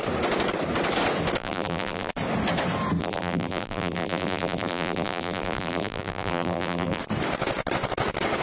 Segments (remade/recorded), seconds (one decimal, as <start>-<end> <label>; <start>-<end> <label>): 0.0-1.4 recorded; 1.4-2.1 remade; 2.1-3.0 recorded; 3.0-7.0 remade; 7.0-8.4 recorded